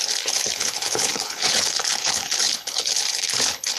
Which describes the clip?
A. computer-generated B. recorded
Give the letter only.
A